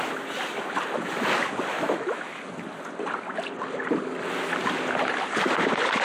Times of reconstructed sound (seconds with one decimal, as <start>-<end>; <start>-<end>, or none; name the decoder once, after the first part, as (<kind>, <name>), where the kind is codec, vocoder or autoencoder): 1.7-2.4 (autoencoder, DAC-VAE)